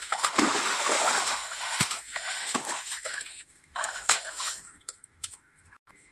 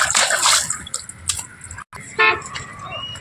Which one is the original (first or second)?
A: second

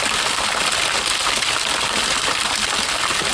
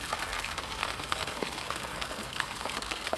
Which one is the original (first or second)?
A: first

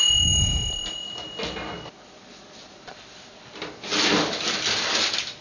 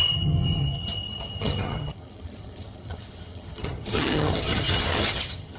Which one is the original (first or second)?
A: first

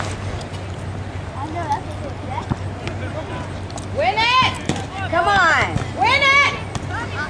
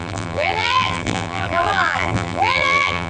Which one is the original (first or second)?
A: first